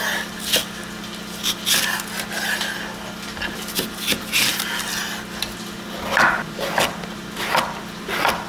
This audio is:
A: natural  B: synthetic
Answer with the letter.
A